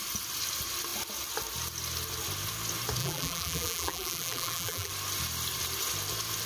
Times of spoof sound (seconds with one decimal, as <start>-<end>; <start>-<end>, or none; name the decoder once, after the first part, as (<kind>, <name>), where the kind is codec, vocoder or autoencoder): 3.0-4.9 (vocoder, BigVGAN v2)